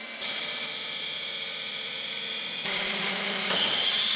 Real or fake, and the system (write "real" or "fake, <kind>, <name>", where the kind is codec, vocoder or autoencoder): fake, vocoder, BigVGAN v2